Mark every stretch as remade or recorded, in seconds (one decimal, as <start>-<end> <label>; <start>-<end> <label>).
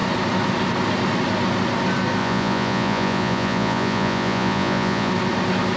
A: 0.0-2.2 recorded; 2.2-5.1 remade; 5.1-5.8 recorded